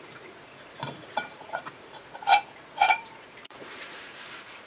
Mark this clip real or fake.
fake